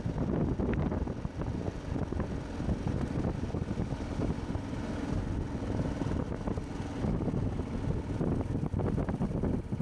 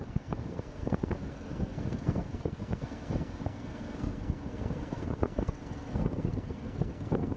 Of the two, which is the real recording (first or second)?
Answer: first